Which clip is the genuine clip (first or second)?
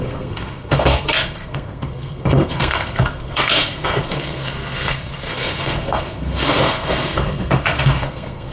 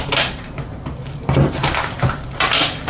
second